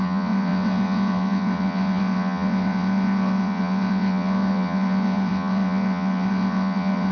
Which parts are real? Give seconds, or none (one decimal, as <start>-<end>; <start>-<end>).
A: none